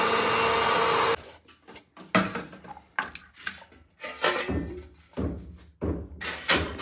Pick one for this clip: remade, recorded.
recorded